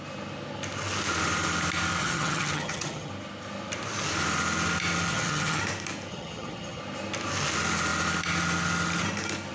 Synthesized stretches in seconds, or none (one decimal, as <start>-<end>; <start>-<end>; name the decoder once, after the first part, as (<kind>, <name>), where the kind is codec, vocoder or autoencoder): 2.0-3.1 (vocoder, HiFi-GAN); 5.1-5.6; 6.1-6.8